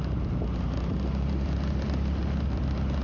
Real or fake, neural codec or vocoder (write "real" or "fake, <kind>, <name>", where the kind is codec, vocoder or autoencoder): real